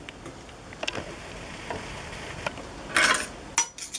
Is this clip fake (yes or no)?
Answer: no